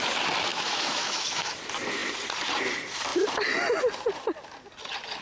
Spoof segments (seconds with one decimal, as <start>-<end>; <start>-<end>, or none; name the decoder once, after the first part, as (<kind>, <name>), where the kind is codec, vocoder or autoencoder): 0.5-1.6 (autoencoder, DAC-VAE)